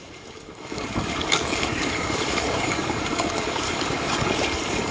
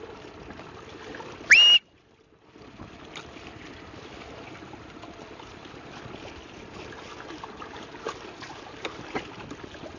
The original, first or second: second